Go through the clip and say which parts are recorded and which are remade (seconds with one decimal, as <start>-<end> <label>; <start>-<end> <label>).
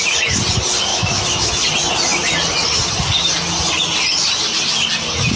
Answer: 0.0-0.9 recorded; 0.9-1.5 remade; 1.5-5.4 recorded